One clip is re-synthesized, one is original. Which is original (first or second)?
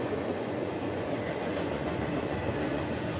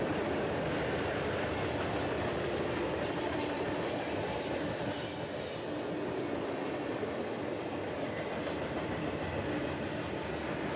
second